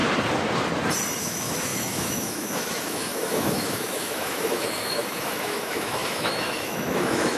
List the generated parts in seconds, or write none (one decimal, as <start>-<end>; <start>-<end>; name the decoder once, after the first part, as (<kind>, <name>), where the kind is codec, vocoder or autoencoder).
1.2-7.4 (autoencoder, DAC-VAE)